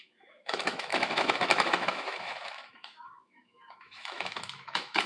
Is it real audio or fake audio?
fake